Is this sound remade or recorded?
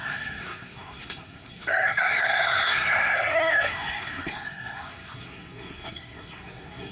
remade